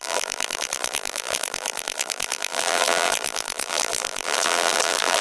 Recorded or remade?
remade